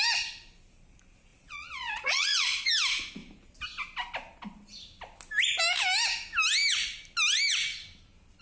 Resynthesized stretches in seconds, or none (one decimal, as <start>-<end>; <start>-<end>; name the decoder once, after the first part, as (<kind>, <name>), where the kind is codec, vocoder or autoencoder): 1.3-2.7 (vocoder, Vocos)